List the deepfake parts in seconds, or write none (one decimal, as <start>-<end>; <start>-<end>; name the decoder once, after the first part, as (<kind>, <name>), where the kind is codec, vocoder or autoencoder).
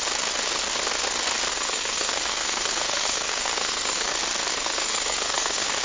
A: 1.5-4.1 (codec, SNAC); 4.5-5.8